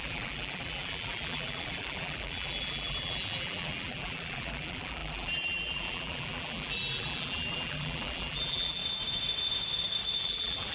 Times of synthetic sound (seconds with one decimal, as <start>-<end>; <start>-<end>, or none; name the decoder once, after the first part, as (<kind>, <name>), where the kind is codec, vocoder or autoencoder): 0.0-8.8 (vocoder, BigVGAN v2); 10.2-10.7